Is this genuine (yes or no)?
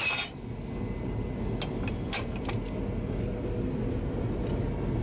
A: yes